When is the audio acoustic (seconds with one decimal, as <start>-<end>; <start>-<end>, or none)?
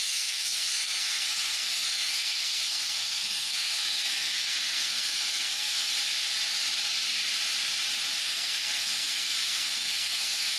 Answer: 5.9-8.2